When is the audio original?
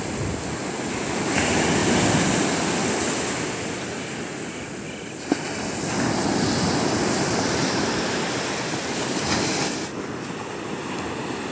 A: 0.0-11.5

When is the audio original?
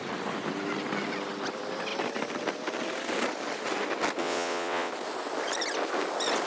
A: 0.0-4.2; 4.9-6.5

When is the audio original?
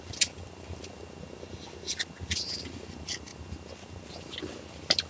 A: 0.0-5.1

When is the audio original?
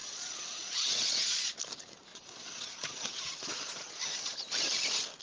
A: 1.5-2.1; 4.0-5.2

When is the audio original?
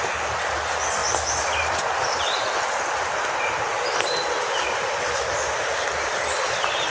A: 0.0-6.9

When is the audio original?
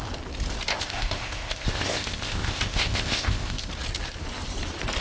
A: 0.0-0.7; 3.7-5.0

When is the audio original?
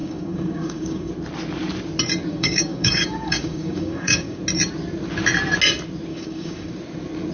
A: 1.1-2.3; 4.4-6.1; 6.7-7.3